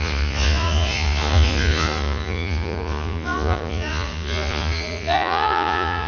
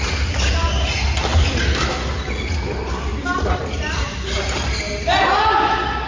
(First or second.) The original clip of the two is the second